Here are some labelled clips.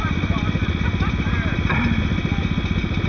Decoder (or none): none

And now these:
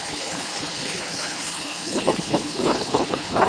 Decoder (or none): codec, HILCodec